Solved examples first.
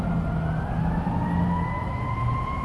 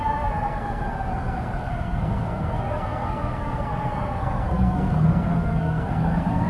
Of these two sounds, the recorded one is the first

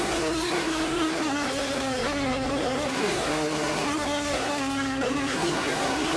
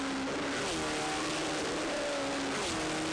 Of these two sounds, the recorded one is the second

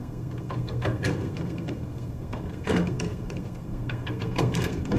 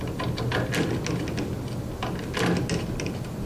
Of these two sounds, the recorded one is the second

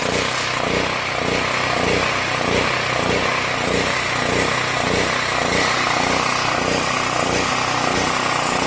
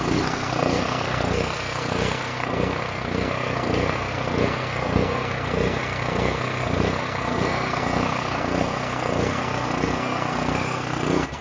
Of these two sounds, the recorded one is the first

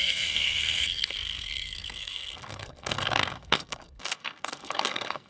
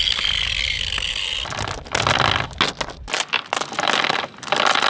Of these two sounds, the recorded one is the second